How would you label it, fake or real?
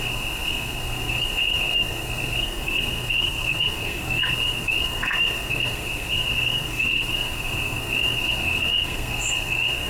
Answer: fake